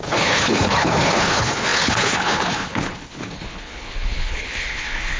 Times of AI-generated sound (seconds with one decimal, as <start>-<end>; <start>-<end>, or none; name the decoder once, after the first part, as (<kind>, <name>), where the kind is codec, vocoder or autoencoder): 0.0-5.2 (codec, HILCodec)